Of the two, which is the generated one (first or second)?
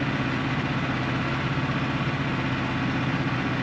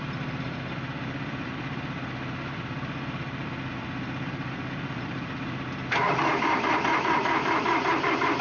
second